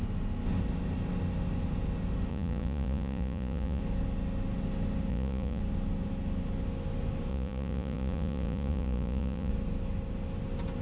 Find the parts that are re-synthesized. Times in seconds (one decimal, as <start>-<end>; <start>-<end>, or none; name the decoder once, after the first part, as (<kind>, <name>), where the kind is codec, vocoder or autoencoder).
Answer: 2.3-3.8 (vocoder, Vocos); 5.1-5.6; 7.3-9.5